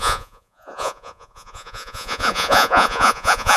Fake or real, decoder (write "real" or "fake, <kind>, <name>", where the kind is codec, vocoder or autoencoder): fake, vocoder, Vocos